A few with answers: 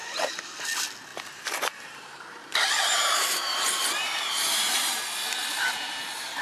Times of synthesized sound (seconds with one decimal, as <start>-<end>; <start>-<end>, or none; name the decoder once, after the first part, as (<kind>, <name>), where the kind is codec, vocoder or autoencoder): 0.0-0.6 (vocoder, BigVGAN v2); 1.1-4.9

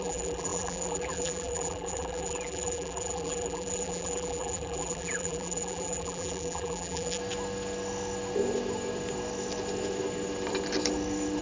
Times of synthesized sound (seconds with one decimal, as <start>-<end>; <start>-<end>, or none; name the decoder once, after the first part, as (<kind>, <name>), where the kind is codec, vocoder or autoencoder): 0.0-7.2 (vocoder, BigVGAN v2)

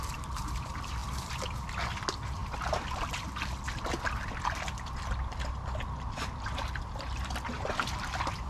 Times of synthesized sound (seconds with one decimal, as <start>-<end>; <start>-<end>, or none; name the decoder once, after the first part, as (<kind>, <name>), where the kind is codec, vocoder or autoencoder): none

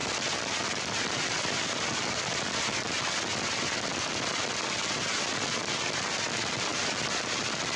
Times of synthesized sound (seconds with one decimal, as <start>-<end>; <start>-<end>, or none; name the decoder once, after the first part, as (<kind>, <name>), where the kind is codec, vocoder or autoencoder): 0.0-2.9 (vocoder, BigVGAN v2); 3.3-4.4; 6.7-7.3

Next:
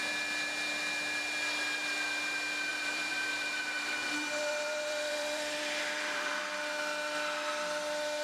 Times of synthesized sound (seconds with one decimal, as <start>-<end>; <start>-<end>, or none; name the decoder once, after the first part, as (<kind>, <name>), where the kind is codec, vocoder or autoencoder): 2.7-6.4 (vocoder, BigVGAN v2)